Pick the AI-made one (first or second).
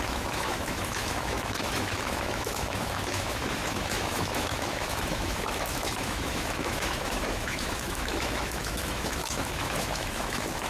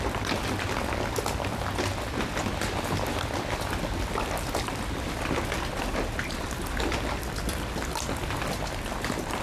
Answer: first